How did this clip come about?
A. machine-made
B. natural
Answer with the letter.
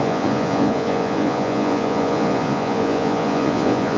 A